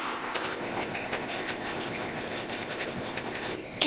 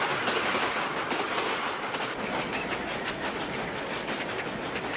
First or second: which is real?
second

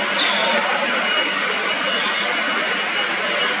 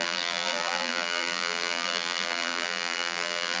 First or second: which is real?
first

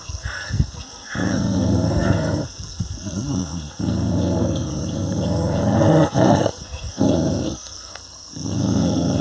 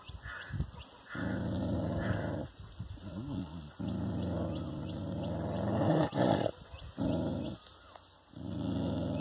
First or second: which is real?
second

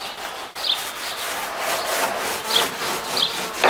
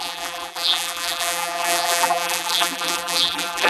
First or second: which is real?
first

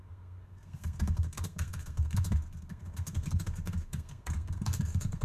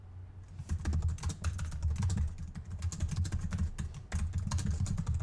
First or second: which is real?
second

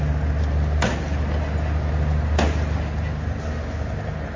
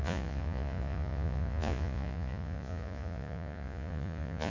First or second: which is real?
first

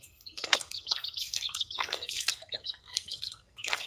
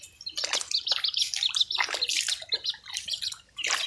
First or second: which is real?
second